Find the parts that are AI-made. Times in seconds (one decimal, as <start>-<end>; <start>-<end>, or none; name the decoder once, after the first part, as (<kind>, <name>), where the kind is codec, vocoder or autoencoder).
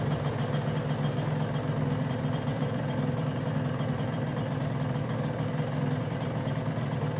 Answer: 0.0-0.4 (vocoder, BigVGAN v2); 1.7-7.2